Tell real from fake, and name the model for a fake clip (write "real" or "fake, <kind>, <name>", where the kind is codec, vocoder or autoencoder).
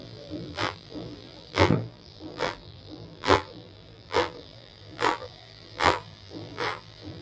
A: fake, vocoder, BigVGAN v2